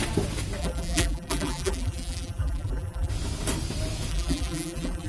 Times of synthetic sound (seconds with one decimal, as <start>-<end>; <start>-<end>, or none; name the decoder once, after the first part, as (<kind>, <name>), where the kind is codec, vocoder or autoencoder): 0.6-3.1 (vocoder, BigVGAN v2); 4.1-5.1